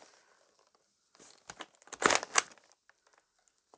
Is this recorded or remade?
recorded